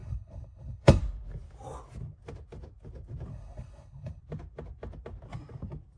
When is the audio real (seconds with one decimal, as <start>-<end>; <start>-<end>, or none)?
1.0-3.3; 4.2-6.0